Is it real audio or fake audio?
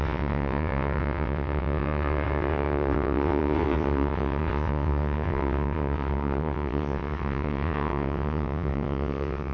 fake